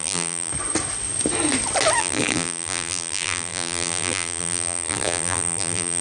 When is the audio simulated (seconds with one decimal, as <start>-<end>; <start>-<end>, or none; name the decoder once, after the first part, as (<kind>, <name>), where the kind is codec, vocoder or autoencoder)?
0.0-0.5 (vocoder, BigVGAN v2); 2.0-6.0